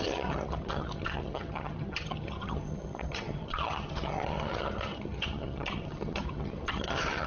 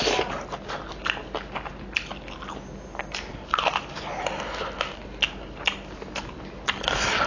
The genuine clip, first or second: second